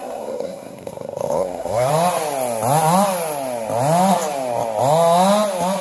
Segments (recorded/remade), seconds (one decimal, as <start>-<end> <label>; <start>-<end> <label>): 0.0-1.9 remade; 1.9-5.8 recorded